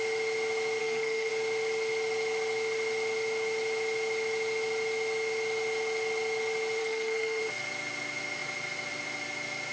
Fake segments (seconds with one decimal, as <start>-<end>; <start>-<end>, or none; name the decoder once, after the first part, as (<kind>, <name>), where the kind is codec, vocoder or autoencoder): 0.8-1.3 (codec, SNAC); 6.8-7.4